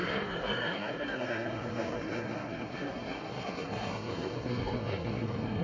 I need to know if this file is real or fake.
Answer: fake